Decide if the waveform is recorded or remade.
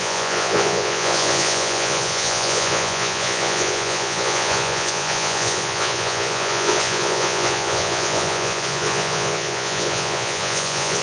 remade